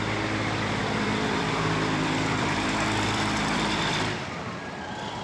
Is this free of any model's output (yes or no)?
no